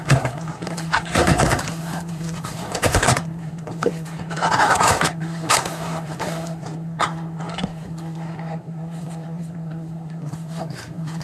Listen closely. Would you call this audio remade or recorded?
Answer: remade